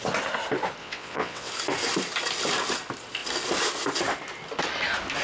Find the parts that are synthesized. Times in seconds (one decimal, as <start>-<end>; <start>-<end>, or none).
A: 0.8-1.5